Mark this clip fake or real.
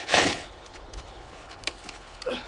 fake